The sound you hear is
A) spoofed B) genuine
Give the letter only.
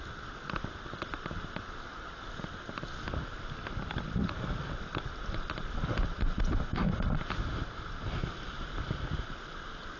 B